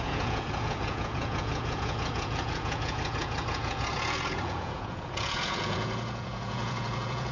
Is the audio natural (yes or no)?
no